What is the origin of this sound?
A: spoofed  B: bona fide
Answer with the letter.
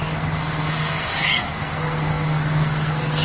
A